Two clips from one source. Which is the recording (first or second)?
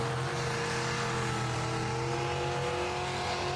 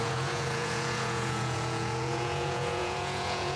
first